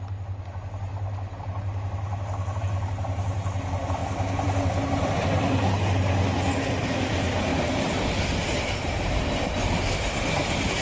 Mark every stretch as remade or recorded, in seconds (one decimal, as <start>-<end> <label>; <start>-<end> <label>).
0.0-4.0 recorded; 4.0-5.1 remade; 5.1-10.8 recorded